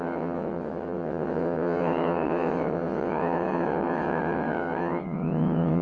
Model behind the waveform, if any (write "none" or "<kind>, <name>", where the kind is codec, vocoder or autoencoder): vocoder, WaveNeXt